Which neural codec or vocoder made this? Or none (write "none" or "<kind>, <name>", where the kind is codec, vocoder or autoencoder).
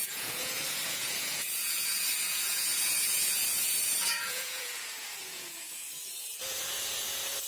vocoder, Vocos